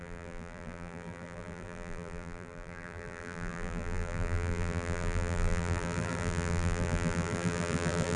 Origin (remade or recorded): remade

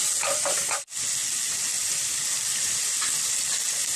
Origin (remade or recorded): recorded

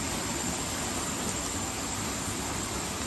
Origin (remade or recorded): recorded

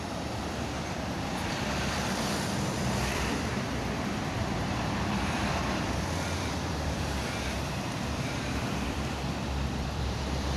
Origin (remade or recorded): remade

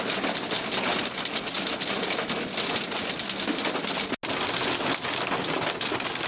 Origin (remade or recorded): recorded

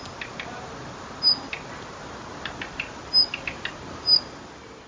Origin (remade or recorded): recorded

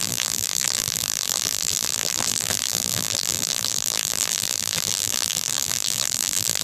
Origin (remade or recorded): remade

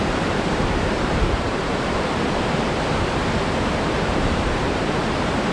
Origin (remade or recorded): remade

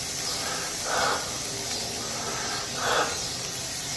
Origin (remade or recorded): remade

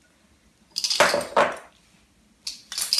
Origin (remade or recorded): recorded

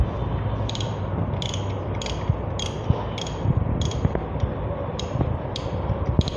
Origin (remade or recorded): recorded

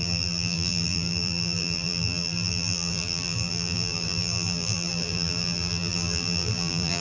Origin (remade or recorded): remade